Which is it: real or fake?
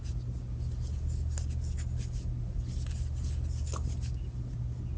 real